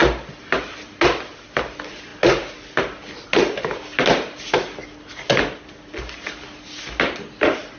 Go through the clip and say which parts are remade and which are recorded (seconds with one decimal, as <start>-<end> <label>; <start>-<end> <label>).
0.0-7.8 recorded